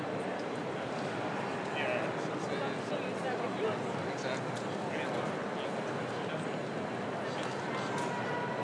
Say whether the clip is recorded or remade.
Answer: recorded